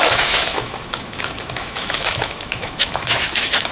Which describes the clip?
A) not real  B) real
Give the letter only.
A